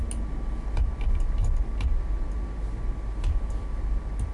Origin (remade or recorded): recorded